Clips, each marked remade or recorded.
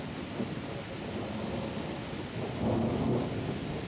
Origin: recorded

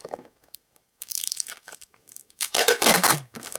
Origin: remade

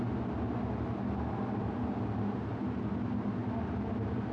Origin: recorded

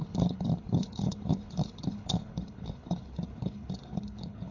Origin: remade